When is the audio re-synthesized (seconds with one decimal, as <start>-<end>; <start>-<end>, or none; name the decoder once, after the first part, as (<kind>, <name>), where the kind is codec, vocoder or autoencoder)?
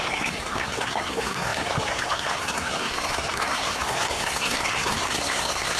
0.0-5.8 (codec, SNAC)